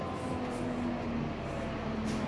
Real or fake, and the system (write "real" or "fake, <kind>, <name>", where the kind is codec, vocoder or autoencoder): real